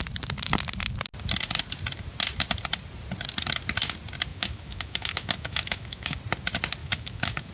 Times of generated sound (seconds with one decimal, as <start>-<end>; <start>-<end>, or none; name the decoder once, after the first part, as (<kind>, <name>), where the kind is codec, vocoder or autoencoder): 4.3-6.2 (autoencoder, DAC-VAE); 6.8-7.5